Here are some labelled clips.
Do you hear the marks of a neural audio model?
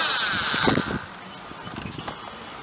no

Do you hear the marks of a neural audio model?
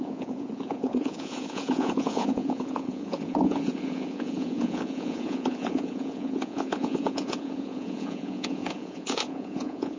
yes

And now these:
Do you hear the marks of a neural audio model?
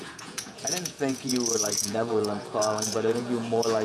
yes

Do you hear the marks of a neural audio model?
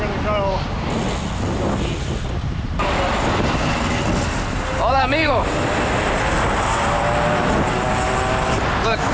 no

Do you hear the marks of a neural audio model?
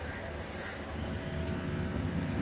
no